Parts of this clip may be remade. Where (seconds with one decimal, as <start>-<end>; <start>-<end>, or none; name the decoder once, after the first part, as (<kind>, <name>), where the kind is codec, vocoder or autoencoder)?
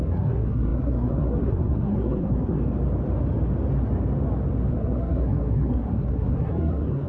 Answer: 0.0-2.6 (codec, SNAC); 4.7-7.1